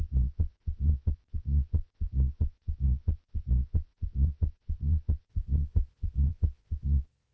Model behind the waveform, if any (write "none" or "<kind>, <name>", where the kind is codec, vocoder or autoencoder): vocoder, Vocos